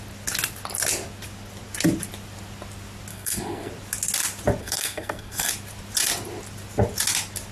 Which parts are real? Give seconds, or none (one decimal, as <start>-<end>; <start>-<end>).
0.0-3.1; 3.7-4.6; 5.5-7.5

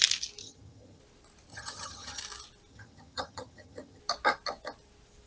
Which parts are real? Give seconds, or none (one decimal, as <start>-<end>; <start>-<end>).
0.0-0.4; 1.0-1.5; 2.2-2.7; 4.0-5.3